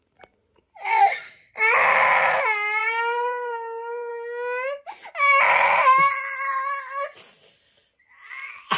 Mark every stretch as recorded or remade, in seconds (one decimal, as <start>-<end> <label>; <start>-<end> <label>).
0.0-2.8 recorded; 2.8-4.1 remade; 4.1-8.8 recorded